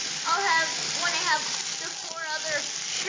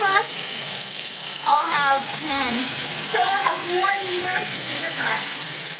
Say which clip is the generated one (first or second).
second